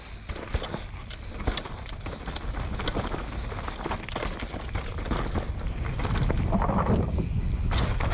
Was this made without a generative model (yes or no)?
yes